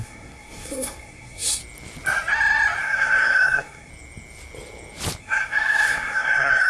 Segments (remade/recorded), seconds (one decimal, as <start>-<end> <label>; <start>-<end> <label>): 0.0-1.6 remade; 1.6-2.8 recorded; 2.8-3.9 remade; 3.9-5.2 recorded; 5.2-6.7 remade